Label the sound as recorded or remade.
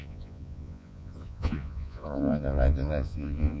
remade